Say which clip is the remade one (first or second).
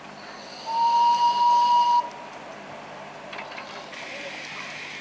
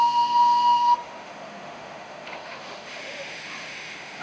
second